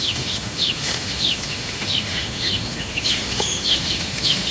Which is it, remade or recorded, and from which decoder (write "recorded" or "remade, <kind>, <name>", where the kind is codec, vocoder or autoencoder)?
remade, autoencoder, DAC-VAE